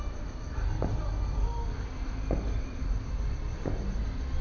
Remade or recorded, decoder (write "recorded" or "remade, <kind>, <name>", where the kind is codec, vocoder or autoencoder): recorded